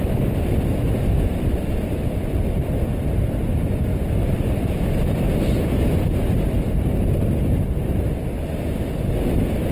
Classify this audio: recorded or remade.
remade